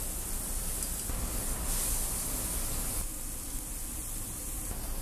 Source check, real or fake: real